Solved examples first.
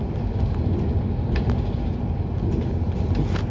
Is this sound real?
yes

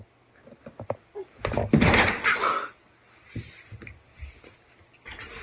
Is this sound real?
yes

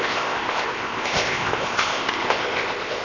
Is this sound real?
no